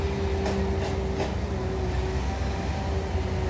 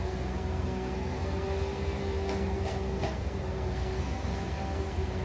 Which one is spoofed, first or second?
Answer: second